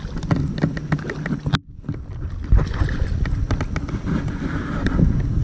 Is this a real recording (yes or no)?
yes